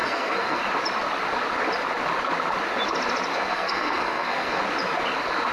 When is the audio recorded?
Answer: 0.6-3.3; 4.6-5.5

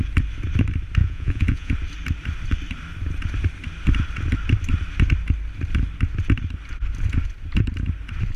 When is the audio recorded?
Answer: 0.0-1.0; 1.7-8.4

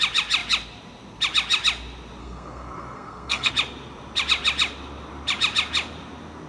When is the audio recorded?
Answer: 0.0-2.2; 3.5-6.5

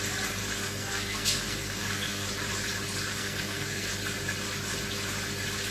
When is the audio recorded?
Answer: 0.0-0.4; 2.3-3.1; 3.9-5.7